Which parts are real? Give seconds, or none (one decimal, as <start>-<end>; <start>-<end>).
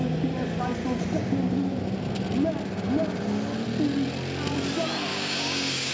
0.0-5.1